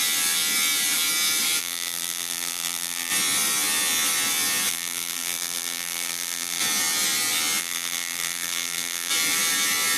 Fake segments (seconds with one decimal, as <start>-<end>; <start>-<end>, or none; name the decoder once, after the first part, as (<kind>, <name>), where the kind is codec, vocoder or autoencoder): 1.6-3.1 (vocoder, BigVGAN v2); 4.7-6.6; 7.6-9.1